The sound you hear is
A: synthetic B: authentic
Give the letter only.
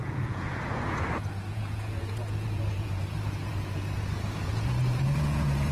A